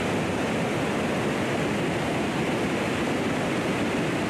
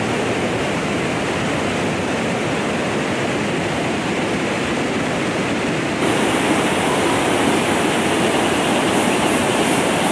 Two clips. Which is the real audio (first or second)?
first